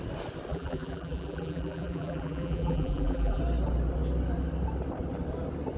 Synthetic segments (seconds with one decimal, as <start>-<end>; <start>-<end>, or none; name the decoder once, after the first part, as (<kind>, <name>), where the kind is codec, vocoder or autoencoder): 0.5-3.4 (vocoder, BigVGAN v2)